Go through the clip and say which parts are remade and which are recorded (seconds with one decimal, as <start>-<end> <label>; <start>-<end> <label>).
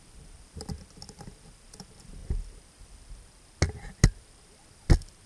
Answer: 0.0-5.3 recorded